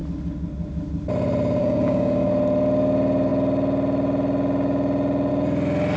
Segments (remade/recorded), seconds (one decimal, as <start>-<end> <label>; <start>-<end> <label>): 0.0-1.6 recorded; 1.6-2.3 remade; 2.3-6.0 recorded